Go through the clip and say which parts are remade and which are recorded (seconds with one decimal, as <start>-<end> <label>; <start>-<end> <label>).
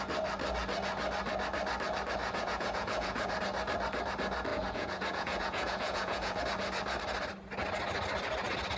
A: 0.0-2.2 recorded; 2.2-3.4 remade; 3.4-4.5 recorded; 4.5-6.4 remade; 6.4-8.8 recorded